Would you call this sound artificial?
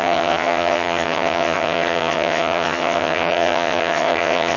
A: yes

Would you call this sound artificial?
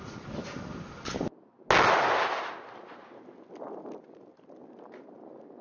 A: no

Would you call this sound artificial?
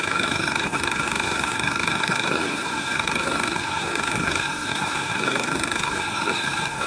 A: yes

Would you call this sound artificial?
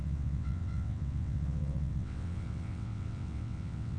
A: yes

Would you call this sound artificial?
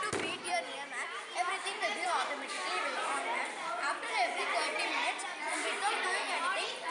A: yes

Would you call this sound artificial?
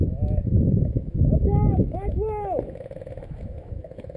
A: yes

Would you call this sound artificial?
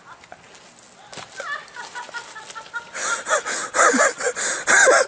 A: no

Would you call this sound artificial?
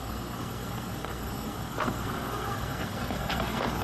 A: yes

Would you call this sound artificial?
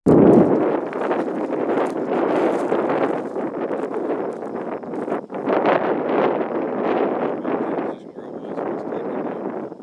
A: no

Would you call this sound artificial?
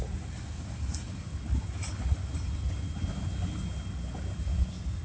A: no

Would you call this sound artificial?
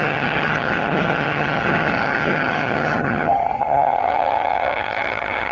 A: yes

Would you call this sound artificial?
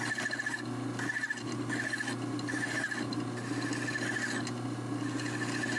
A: no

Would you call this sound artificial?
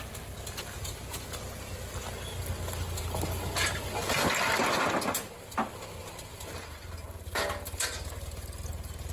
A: no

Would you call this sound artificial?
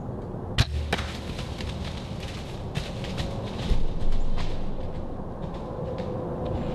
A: no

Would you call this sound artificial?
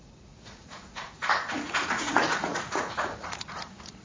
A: yes